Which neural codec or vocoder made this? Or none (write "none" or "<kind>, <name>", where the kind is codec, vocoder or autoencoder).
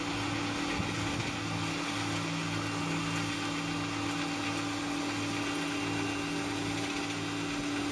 none